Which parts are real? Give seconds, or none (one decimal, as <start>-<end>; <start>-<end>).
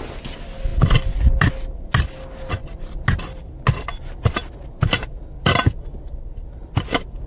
0.0-7.3